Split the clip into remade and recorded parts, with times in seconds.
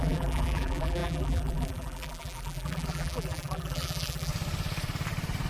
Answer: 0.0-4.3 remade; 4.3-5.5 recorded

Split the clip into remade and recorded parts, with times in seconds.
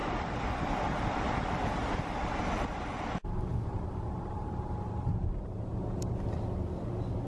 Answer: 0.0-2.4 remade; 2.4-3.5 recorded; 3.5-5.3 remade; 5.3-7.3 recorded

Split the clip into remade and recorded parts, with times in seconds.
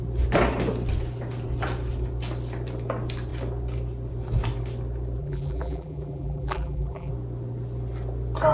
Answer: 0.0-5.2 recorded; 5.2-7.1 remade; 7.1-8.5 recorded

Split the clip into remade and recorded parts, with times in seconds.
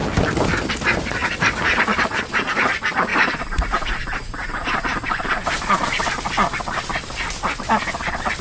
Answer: 0.0-1.2 recorded; 1.2-2.7 remade; 2.7-3.1 recorded; 3.1-5.7 remade; 5.7-8.4 recorded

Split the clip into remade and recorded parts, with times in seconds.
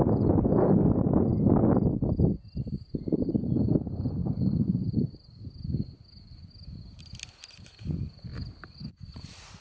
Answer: 0.0-4.2 recorded; 4.2-5.0 remade; 5.0-8.3 recorded; 8.3-8.8 remade; 8.8-9.6 recorded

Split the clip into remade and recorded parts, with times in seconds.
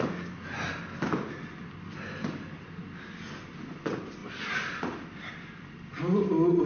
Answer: 0.0-4.2 recorded; 4.2-5.2 remade; 5.2-6.7 recorded